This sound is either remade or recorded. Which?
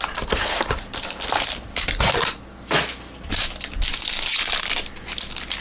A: recorded